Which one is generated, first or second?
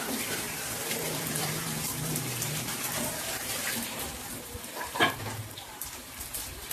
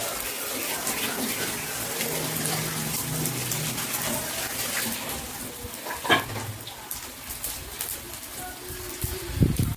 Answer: first